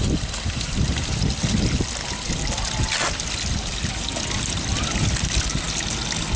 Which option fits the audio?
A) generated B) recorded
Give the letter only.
B